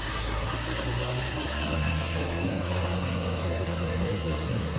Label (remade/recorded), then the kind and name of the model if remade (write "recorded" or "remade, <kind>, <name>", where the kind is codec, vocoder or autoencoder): remade, codec, SNAC